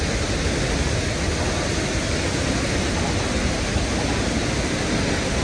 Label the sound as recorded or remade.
recorded